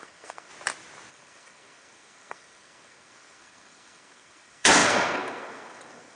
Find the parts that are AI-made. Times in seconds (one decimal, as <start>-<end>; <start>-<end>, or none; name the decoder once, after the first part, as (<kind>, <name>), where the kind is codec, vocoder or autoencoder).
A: 0.0-0.5 (codec, SNAC); 1.1-6.2

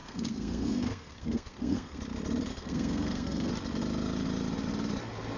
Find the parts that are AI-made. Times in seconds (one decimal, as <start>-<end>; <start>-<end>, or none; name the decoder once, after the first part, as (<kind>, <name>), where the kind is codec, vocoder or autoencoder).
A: 0.0-2.0 (codec, SNAC); 2.5-3.5

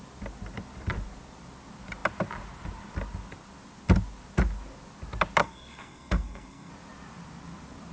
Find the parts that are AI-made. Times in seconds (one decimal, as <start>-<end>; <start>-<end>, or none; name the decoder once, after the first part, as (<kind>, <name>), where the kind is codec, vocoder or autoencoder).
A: 5.4-6.7 (codec, SNAC)

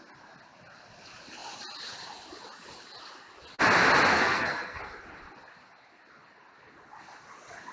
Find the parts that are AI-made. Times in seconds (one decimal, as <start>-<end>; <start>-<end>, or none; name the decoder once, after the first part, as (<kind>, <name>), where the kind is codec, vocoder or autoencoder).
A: 4.1-4.8 (codec, SNAC)

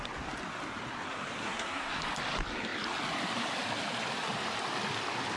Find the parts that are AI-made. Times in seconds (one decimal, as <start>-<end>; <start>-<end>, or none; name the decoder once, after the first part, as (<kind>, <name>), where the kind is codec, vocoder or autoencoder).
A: 1.4-2.0 (codec, SNAC)

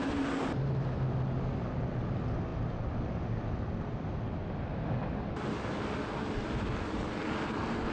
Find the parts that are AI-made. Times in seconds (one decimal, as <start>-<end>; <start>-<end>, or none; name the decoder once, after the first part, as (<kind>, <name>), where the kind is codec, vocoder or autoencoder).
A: none